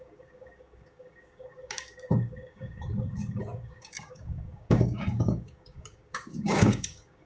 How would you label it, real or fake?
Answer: fake